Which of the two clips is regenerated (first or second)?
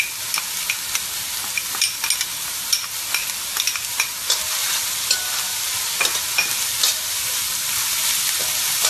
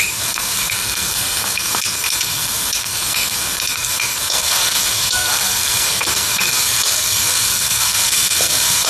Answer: second